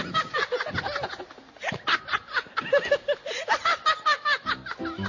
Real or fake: real